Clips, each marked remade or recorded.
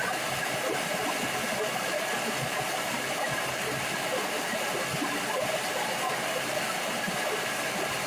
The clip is recorded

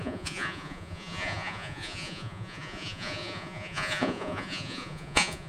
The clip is remade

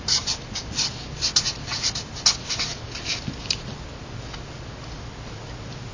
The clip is recorded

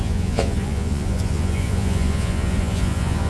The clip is remade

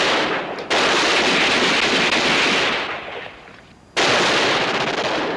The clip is recorded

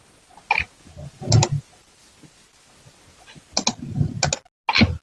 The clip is recorded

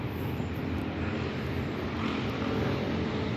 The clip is recorded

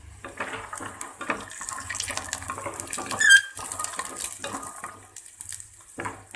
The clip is recorded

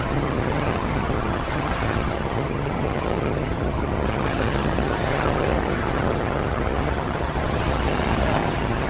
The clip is remade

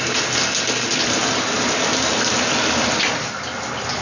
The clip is recorded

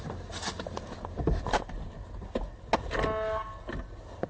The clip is recorded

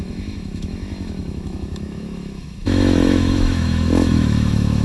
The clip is remade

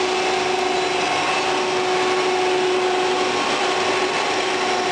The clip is recorded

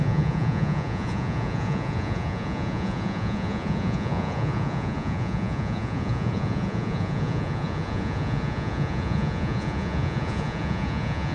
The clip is remade